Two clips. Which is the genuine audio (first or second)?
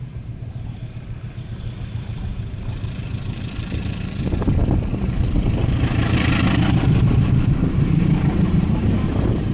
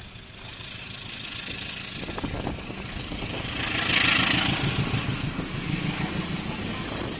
second